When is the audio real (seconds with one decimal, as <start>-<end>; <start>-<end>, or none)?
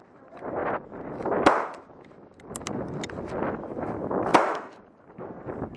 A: 0.0-4.3; 4.8-5.8